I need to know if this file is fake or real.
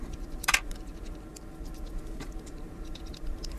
fake